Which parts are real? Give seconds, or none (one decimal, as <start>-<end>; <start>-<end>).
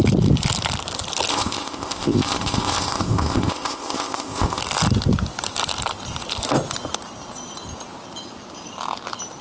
0.0-1.3; 4.6-9.4